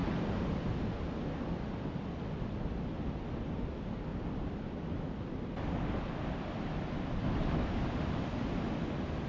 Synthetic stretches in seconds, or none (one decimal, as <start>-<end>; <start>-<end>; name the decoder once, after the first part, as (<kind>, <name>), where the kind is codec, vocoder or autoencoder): 4.1-5.0 (vocoder, BigVGAN v2)